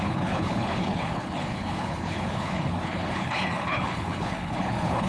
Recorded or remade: remade